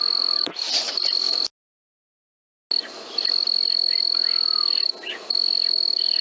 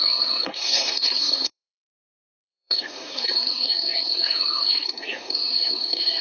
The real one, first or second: first